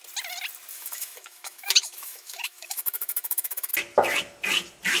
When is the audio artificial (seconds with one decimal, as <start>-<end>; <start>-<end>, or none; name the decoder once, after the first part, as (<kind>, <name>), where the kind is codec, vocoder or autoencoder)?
0.7-3.7 (autoencoder, DAC-VAE)